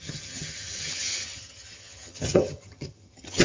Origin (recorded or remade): remade